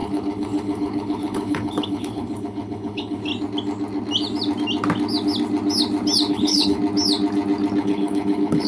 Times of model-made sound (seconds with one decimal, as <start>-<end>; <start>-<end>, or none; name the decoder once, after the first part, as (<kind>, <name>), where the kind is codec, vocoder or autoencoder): 0.0-3.3 (codec, HILCodec); 6.3-6.8; 7.8-8.7